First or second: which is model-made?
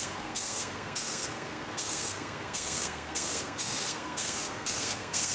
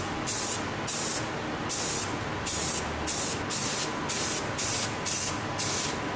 first